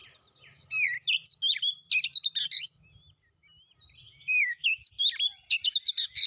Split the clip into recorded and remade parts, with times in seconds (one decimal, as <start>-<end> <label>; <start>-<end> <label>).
0.0-4.1 recorded; 4.1-4.9 remade; 4.9-6.3 recorded